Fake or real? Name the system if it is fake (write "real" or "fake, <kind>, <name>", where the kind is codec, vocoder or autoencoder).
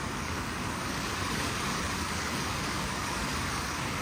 fake, codec, DAC